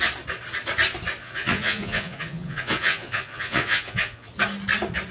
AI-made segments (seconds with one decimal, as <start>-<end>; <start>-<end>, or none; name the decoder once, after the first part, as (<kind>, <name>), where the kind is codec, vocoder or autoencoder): 1.2-4.3 (vocoder, Vocos)